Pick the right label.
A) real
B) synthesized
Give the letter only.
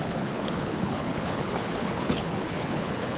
B